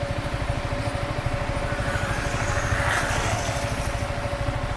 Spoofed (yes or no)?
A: no